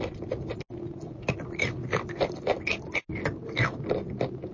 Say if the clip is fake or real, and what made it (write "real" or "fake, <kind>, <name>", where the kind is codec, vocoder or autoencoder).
real